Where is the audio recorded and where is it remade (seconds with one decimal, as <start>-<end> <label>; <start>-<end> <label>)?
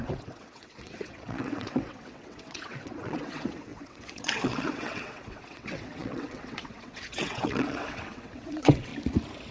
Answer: 0.0-8.9 remade; 8.9-9.5 recorded